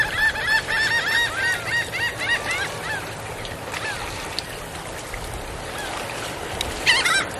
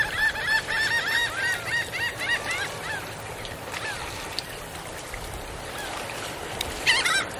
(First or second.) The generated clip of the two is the second